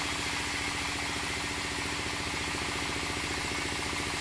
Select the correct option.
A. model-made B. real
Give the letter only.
B